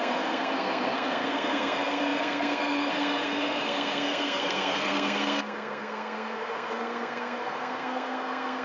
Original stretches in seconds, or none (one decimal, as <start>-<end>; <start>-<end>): none